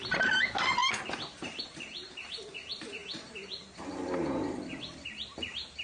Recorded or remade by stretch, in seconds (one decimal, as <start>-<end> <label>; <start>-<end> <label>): 0.0-5.8 remade